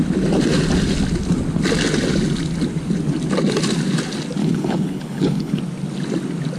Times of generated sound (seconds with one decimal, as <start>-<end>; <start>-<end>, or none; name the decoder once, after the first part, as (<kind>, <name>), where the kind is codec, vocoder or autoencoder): 4.4-5.6 (codec, HILCodec)

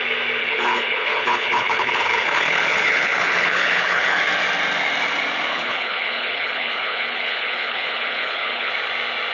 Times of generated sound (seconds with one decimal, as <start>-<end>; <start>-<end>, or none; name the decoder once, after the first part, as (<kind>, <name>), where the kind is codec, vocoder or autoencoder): 0.4-4.2 (codec, HILCodec); 5.5-8.7

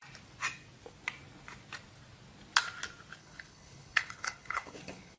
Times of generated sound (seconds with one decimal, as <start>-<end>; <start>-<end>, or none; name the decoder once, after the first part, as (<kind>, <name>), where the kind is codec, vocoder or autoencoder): 3.2-5.2 (codec, HILCodec)

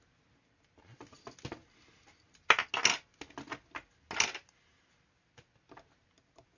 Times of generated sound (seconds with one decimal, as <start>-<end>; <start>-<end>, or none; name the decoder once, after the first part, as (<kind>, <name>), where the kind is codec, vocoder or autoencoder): none

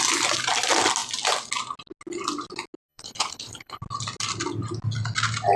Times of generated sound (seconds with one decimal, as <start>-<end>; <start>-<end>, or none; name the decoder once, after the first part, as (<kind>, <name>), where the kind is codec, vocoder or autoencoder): 2.9-3.8 (codec, HILCodec)

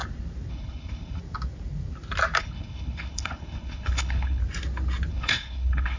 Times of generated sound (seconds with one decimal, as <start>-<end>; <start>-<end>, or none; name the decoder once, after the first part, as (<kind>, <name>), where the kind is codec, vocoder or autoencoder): 0.5-1.2 (codec, HILCodec); 2.4-4.4; 5.1-6.0